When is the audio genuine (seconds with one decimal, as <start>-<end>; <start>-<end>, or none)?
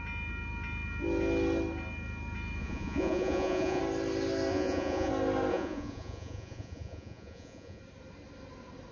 0.0-2.6; 3.8-4.5; 5.1-5.5; 7.8-8.9